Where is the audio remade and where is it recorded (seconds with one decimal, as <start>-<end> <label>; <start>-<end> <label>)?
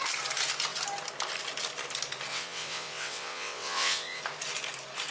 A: 0.0-2.3 recorded; 2.3-4.2 remade; 4.2-5.1 recorded